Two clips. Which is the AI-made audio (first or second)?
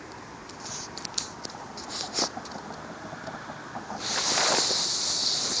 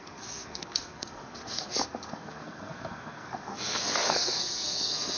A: second